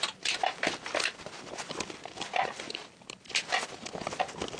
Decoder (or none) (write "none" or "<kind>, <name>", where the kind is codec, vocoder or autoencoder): vocoder, BigVGAN v2